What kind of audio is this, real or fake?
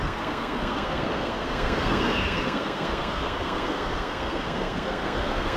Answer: fake